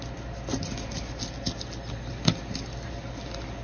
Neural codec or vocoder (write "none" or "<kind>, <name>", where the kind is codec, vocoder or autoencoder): none